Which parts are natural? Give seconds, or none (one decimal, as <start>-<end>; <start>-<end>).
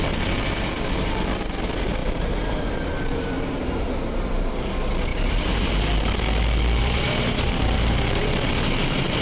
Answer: 0.0-2.0; 4.5-5.1; 5.7-6.8